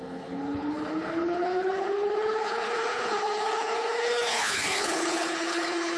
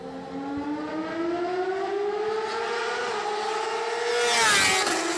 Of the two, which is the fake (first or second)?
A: first